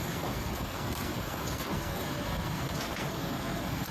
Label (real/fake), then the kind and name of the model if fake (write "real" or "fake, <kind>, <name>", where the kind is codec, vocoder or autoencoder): fake, codec, SNAC